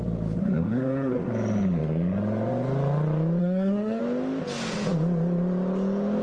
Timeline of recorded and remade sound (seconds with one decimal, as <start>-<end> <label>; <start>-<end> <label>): 0.0-0.4 recorded; 0.4-1.3 remade; 1.3-3.4 recorded; 3.4-4.0 remade; 4.0-6.2 recorded